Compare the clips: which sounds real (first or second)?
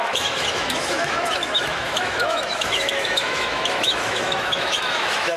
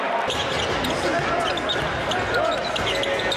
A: second